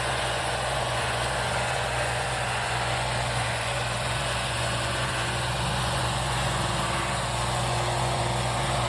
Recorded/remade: remade